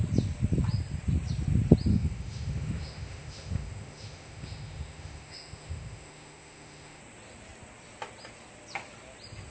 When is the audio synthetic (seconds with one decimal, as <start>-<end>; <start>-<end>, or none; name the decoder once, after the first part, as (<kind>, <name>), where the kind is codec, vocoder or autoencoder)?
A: 1.9-7.0 (autoencoder, DAC-VAE)